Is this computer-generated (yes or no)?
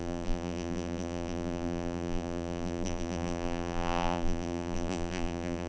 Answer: yes